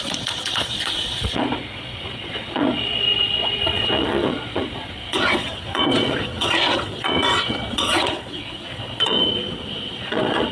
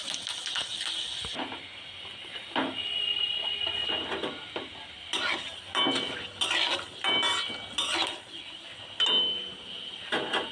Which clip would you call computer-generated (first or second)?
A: first